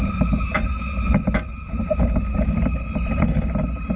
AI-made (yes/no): no